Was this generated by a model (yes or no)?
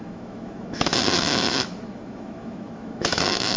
yes